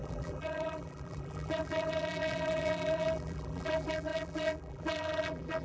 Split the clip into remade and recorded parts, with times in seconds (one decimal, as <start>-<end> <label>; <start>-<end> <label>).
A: 0.0-5.6 remade

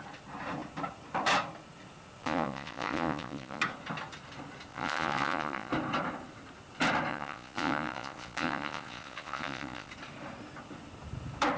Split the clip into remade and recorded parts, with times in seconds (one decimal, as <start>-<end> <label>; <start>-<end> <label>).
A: 0.0-2.2 recorded; 2.2-3.6 remade; 3.6-4.7 recorded; 4.7-5.7 remade; 5.7-7.1 recorded; 7.1-9.9 remade; 9.9-11.6 recorded

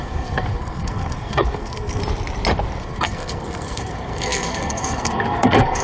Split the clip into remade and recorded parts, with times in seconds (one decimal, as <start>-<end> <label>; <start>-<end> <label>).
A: 0.0-2.0 remade; 2.0-2.8 recorded; 2.8-5.8 remade

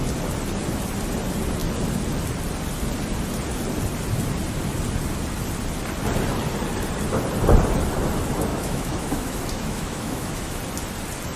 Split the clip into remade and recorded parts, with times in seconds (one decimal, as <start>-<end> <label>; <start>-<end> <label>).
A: 0.0-8.5 recorded; 8.5-10.6 remade; 10.6-11.4 recorded

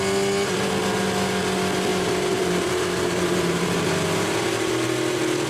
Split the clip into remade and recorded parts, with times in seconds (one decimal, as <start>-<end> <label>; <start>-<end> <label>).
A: 0.0-1.9 recorded; 1.9-4.7 remade; 4.7-5.5 recorded